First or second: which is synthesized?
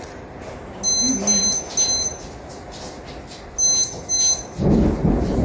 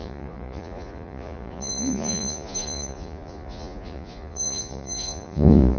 second